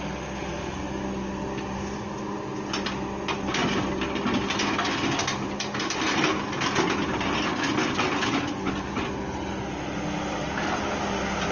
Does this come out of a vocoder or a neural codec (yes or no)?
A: no